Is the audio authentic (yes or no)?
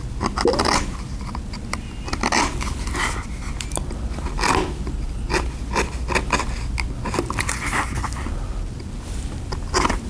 yes